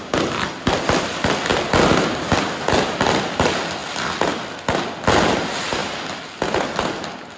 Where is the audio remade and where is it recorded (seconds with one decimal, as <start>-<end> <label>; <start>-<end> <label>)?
0.0-7.4 recorded